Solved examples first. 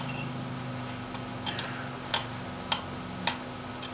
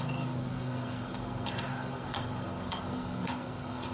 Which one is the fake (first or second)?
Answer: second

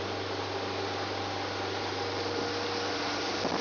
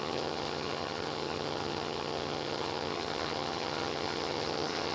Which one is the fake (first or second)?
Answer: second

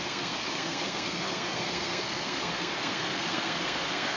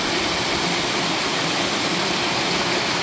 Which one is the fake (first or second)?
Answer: first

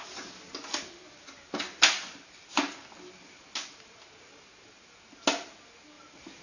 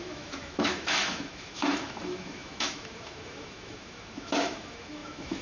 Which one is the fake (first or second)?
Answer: second